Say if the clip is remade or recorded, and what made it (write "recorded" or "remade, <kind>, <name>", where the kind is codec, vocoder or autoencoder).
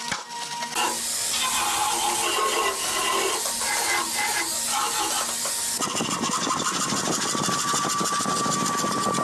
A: recorded